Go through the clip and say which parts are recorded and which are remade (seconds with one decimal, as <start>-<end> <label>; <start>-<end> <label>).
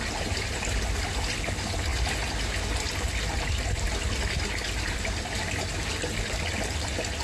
0.0-7.2 recorded